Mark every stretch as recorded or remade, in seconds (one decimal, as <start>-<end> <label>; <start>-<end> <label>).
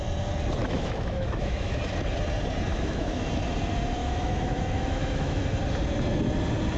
0.0-0.6 recorded; 0.6-1.8 remade; 1.8-2.7 recorded; 2.7-3.3 remade; 3.3-4.0 recorded; 4.0-5.4 remade; 5.4-6.8 recorded